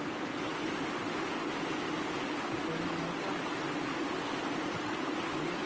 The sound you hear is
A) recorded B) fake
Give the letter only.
A